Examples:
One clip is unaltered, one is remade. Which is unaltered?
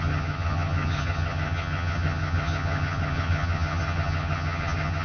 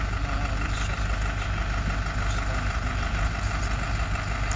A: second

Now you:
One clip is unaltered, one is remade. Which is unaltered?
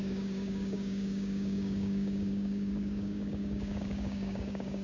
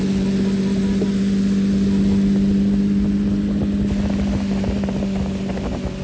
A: second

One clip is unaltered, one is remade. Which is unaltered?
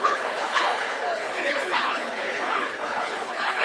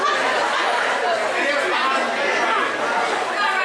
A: second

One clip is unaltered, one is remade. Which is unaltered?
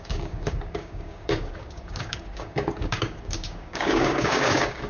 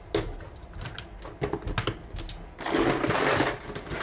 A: second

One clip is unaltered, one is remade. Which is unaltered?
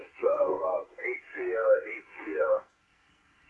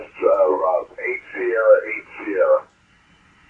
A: second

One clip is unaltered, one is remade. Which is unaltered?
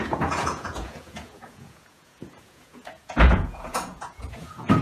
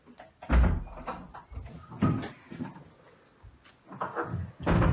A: second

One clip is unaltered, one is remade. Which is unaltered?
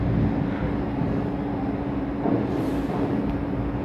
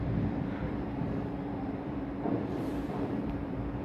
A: first